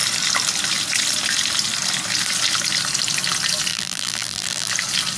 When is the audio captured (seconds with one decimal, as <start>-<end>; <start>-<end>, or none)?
0.0-3.7; 4.7-5.2